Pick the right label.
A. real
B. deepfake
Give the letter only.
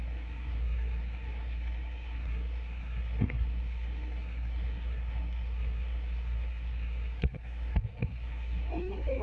B